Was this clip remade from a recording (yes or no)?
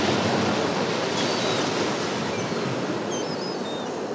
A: no